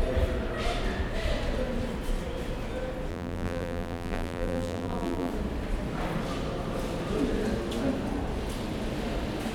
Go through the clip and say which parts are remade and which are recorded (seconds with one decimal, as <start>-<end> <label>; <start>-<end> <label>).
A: 0.0-3.1 recorded; 3.1-5.3 remade; 5.3-9.5 recorded